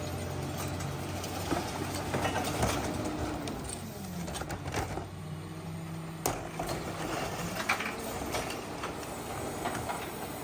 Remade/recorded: recorded